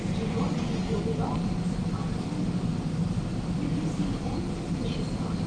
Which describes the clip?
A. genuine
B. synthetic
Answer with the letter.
A